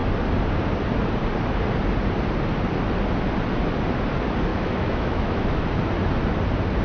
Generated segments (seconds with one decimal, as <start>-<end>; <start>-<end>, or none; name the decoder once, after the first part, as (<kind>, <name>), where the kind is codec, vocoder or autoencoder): 4.5-5.6 (autoencoder, DAC-VAE)